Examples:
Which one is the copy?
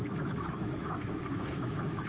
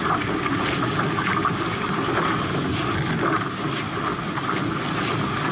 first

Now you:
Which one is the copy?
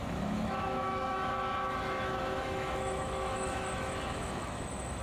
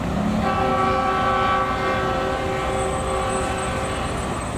first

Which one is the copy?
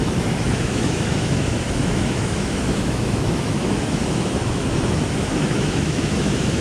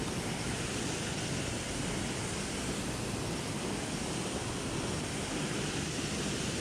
first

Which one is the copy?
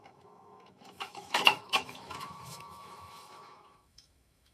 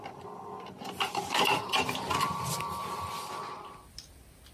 first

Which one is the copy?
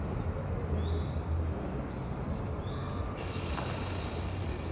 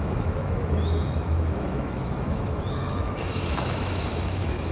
second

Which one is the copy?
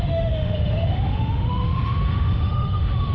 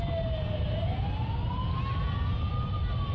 first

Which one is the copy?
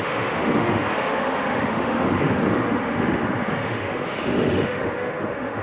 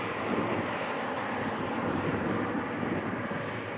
first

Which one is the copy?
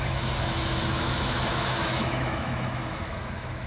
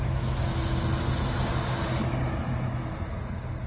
first